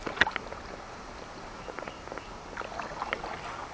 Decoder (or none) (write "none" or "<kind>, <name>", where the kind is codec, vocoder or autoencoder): none